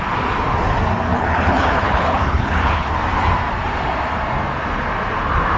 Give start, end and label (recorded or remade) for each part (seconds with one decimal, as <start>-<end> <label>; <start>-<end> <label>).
0.0-1.1 recorded; 1.1-2.9 remade; 2.9-5.6 recorded